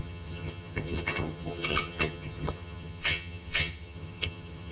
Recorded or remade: remade